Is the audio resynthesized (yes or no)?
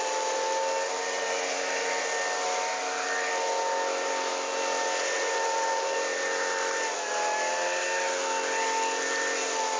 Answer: no